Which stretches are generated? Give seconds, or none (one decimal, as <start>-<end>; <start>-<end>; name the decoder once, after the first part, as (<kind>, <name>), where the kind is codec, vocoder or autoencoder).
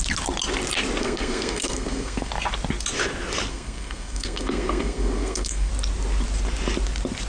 1.0-2.3 (codec, SNAC); 3.5-5.7